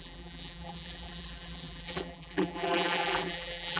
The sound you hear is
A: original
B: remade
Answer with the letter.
B